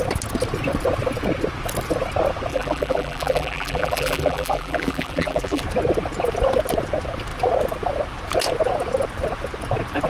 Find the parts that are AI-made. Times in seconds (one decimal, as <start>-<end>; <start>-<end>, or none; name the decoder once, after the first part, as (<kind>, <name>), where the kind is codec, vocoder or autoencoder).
2.5-5.6 (vocoder, BigVGAN v2)

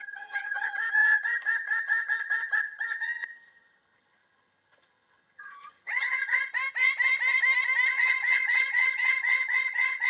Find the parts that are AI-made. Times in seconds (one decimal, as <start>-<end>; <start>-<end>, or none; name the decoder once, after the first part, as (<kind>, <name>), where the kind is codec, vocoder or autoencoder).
0.0-6.5 (vocoder, HiFi-GAN); 7.9-10.1

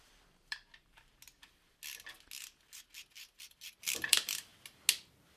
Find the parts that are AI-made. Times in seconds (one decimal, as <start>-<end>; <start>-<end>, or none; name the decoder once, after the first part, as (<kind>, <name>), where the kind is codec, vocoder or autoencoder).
0.0-1.1 (vocoder, BigVGAN v2); 4.1-4.5

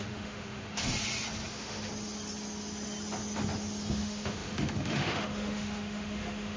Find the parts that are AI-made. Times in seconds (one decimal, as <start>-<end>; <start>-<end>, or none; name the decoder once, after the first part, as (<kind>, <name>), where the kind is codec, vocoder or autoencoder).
0.0-0.9 (autoencoder, DAC-VAE); 1.5-1.9; 3.9-6.6

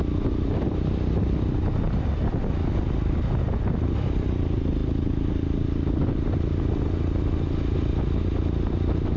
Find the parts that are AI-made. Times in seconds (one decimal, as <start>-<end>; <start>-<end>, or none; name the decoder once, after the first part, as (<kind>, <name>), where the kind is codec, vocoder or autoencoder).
none